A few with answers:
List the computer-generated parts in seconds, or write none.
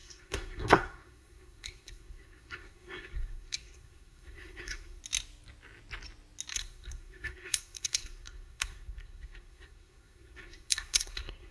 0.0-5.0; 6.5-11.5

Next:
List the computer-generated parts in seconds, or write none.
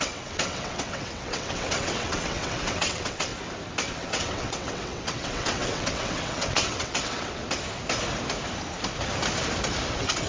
0.0-3.3; 3.9-7.4; 9.9-10.3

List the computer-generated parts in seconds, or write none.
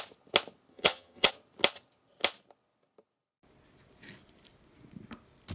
0.7-1.3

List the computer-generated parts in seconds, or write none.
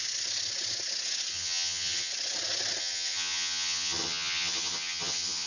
1.3-2.1; 2.8-5.5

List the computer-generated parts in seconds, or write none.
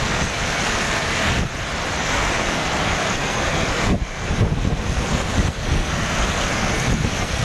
0.0-1.5; 2.0-7.4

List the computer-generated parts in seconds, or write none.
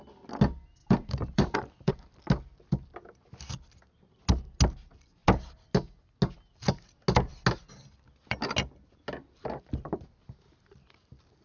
0.8-1.9